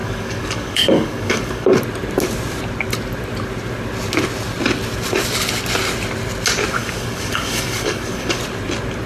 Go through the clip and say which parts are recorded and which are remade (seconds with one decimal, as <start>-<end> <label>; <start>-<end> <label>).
0.0-1.8 remade; 1.8-6.8 recorded; 6.8-8.4 remade; 8.4-9.1 recorded